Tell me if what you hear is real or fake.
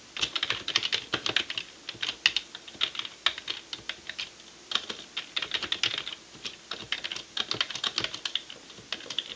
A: real